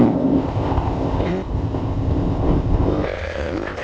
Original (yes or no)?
no